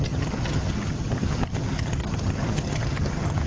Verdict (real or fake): fake